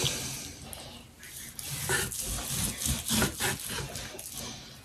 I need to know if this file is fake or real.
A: real